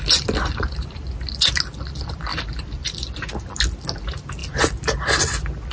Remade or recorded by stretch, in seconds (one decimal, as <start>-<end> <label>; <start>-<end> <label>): 0.0-5.7 recorded